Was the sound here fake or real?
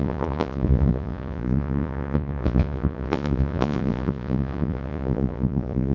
fake